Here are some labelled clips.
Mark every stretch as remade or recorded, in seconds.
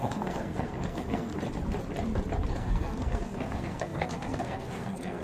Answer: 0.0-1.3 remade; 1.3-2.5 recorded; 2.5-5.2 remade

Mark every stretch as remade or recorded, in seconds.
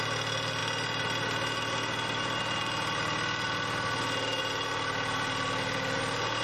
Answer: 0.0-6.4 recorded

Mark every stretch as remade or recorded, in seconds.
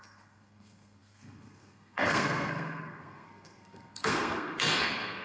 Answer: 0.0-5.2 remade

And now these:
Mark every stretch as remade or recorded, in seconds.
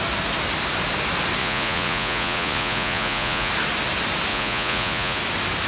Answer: 0.0-1.4 recorded; 1.4-3.5 remade; 3.5-4.3 recorded; 4.3-5.2 remade; 5.2-5.7 recorded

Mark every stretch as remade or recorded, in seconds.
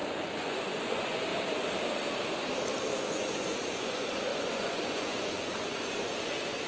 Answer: 0.0-1.3 remade; 1.3-2.9 recorded; 2.9-6.7 remade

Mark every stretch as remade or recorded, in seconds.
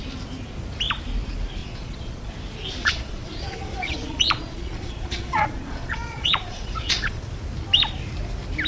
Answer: 0.0-1.6 recorded; 1.6-2.3 remade; 2.3-2.8 recorded; 2.8-7.2 remade; 7.2-8.7 recorded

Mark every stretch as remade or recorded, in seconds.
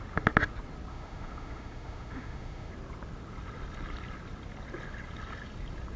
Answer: 0.0-0.9 recorded; 0.9-2.7 remade; 2.7-6.0 recorded